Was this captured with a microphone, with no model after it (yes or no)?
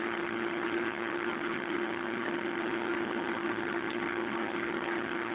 no